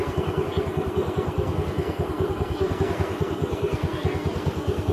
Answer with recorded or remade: remade